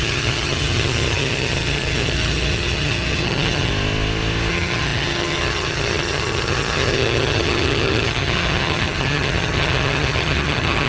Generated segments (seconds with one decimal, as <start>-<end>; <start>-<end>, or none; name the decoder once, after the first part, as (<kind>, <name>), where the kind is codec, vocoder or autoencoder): 0.0-3.7 (vocoder, HiFi-GAN); 4.5-10.9